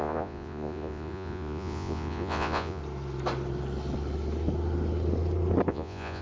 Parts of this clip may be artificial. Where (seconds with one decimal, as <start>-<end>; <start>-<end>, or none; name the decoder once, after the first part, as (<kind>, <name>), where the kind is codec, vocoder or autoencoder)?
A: 0.0-2.8 (vocoder, Vocos); 5.7-6.2